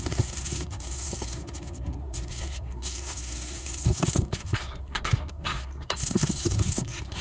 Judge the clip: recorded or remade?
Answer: remade